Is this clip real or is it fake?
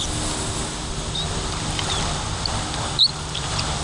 real